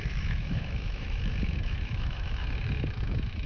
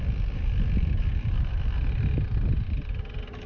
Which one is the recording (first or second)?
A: second